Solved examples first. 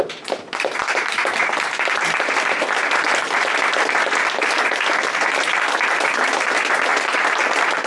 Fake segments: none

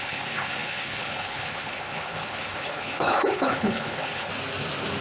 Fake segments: 0.0-4.3 (codec, HILCodec)

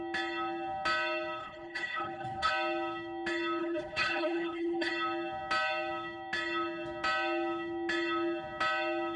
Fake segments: 1.4-2.5 (codec, HILCodec); 3.6-4.9